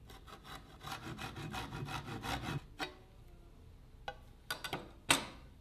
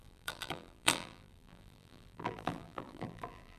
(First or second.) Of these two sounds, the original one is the first